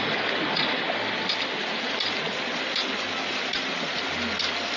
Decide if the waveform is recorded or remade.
recorded